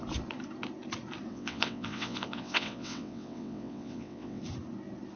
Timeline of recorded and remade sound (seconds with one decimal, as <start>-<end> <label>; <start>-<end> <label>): 0.0-1.3 recorded; 1.3-4.4 remade; 4.4-5.2 recorded